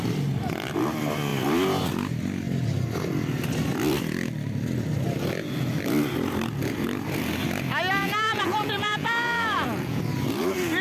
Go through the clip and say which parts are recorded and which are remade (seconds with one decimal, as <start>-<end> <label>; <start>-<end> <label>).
0.0-8.0 recorded; 8.0-10.0 remade; 10.0-10.8 recorded